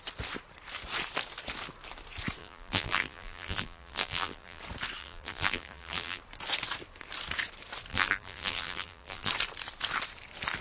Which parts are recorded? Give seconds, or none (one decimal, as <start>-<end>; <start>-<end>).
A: 0.0-2.4; 4.6-5.0; 6.2-7.9; 9.3-10.6